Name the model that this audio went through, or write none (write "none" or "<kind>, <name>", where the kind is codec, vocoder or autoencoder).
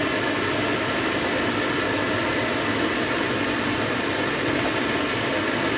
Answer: none